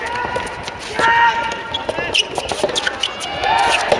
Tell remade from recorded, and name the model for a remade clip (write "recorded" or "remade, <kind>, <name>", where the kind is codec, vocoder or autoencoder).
recorded